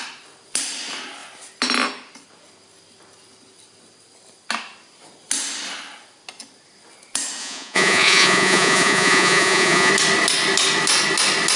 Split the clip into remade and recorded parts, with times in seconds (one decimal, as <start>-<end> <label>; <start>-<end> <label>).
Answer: 0.0-7.4 recorded; 7.4-9.9 remade; 9.9-11.6 recorded

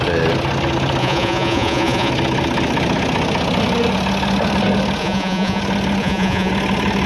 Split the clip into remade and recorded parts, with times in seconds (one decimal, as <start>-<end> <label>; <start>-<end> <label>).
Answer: 0.0-1.0 recorded; 1.0-2.1 remade; 2.1-5.0 recorded; 5.0-5.6 remade; 5.6-6.0 recorded; 6.0-6.5 remade; 6.5-7.1 recorded

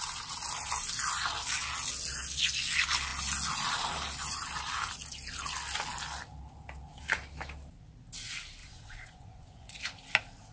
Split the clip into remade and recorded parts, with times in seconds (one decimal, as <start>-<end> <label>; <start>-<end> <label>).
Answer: 0.0-8.6 recorded; 8.6-9.8 remade; 9.8-10.5 recorded

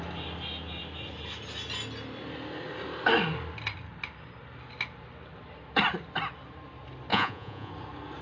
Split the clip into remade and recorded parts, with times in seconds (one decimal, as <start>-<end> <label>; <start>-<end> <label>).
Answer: 0.0-7.1 recorded; 7.1-7.7 remade; 7.7-8.2 recorded

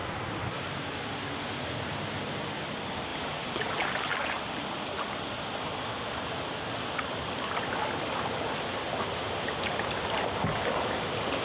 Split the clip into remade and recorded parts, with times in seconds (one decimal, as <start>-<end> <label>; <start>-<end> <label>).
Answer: 0.0-11.4 recorded